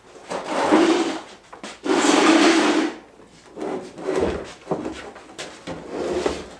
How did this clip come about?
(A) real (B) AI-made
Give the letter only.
A